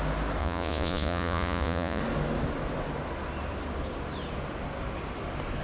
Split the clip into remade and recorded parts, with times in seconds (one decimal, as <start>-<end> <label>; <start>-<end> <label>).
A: 0.0-0.4 recorded; 0.4-2.0 remade; 2.0-5.6 recorded